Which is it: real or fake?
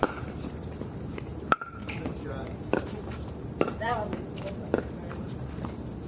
fake